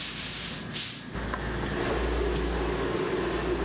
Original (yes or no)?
yes